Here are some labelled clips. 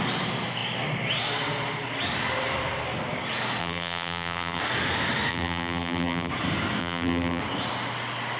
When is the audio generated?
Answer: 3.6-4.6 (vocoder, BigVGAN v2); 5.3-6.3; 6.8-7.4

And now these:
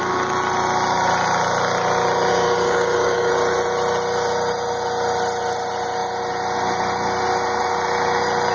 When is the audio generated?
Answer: 2.3-3.3 (codec, DAC)

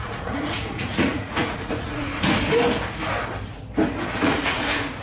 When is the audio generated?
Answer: 0.0-2.1 (vocoder, Vocos); 4.2-5.0

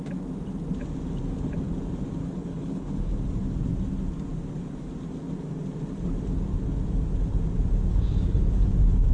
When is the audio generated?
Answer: 2.2-3.1 (codec, HILCodec); 7.9-8.7

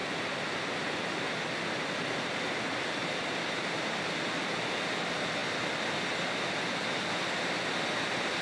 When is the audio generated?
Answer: 0.0-1.5 (vocoder, BigVGAN v2); 3.0-3.9

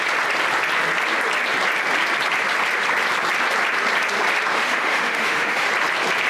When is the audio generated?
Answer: 4.5-5.7 (autoencoder, DAC-VAE)